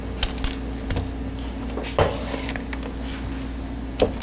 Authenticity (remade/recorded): recorded